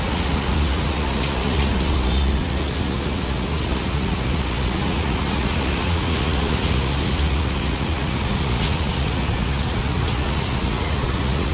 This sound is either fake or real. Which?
fake